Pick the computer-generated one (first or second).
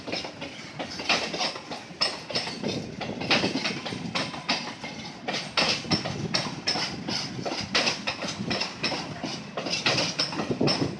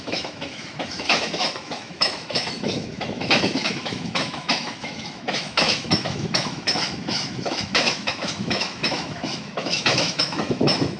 second